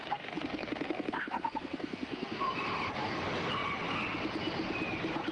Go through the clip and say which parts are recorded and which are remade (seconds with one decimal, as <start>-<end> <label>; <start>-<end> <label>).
0.0-2.5 remade; 2.5-5.3 recorded